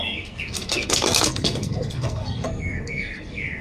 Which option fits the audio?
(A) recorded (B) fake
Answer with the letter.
B